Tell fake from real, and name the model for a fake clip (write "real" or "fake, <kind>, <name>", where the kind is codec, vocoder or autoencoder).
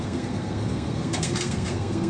fake, codec, SNAC